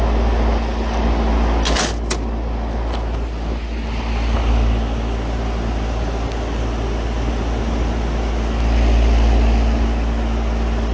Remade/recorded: recorded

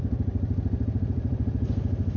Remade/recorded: recorded